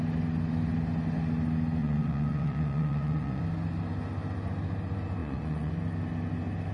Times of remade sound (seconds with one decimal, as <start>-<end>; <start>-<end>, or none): 1.8-3.4; 5.2-5.7